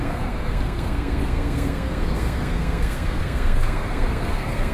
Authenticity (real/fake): fake